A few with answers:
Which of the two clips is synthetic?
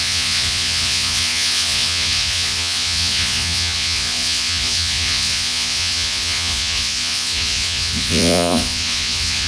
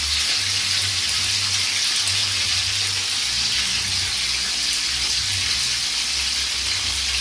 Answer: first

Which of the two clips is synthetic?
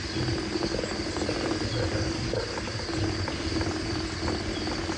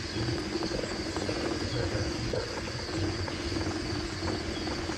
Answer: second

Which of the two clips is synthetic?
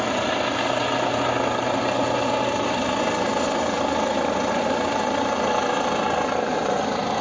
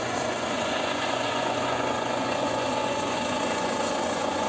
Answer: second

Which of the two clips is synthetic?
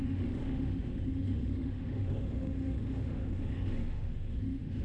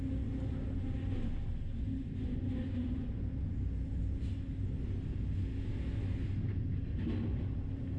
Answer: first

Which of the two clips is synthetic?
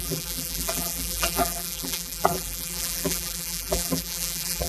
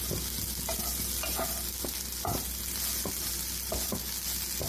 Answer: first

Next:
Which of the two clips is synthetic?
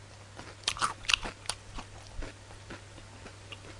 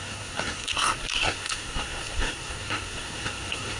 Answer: second